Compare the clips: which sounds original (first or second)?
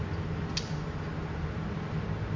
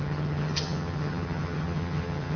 first